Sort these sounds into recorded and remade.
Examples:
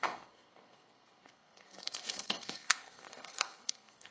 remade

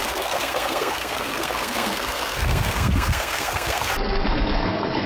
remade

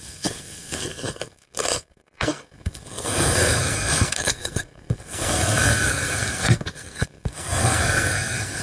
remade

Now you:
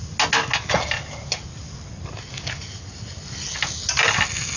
recorded